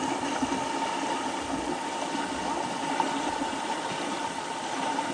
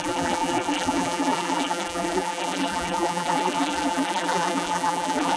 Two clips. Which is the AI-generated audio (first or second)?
second